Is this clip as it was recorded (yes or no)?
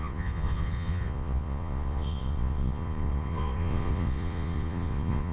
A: no